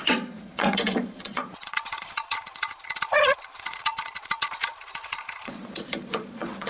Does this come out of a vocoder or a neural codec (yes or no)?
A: yes